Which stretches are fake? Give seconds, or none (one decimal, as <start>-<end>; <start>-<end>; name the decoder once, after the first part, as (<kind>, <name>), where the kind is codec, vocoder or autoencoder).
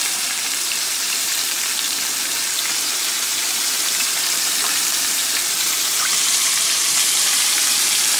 0.0-1.3 (vocoder, BigVGAN v2); 1.9-8.2